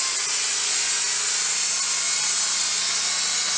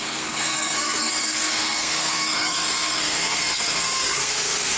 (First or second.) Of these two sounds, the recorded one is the first